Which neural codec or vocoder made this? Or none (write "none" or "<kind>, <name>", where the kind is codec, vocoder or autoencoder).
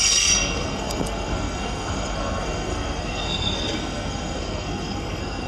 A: codec, SNAC